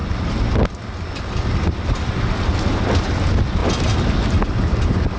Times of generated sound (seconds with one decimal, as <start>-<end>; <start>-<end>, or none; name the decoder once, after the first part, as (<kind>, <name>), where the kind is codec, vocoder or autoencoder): none